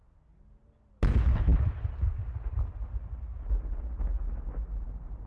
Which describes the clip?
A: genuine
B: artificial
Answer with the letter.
A